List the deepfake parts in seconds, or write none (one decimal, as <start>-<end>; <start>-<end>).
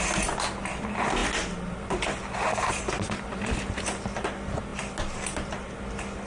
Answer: none